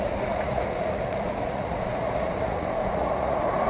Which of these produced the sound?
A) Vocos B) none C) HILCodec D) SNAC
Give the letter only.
A